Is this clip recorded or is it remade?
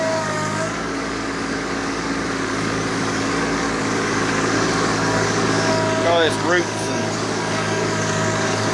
remade